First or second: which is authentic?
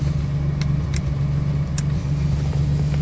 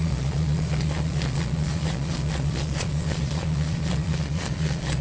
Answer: first